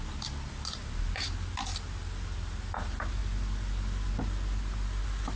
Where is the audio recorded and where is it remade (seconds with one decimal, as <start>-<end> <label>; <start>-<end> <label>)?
0.0-5.4 recorded